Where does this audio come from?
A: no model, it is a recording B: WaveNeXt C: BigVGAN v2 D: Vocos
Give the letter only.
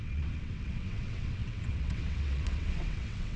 B